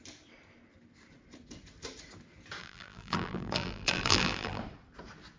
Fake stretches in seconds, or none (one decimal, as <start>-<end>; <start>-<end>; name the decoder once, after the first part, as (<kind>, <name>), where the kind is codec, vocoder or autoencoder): 2.6-4.6 (vocoder, BigVGAN v2)